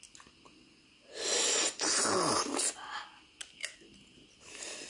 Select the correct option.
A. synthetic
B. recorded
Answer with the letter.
B